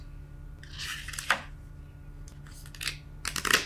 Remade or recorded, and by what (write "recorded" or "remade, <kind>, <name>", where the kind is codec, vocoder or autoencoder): recorded